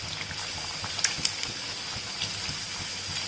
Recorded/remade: recorded